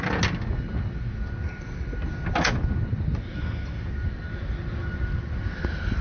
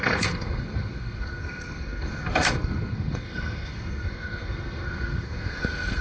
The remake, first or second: second